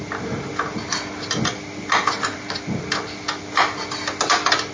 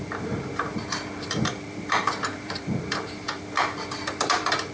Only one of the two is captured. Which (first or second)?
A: first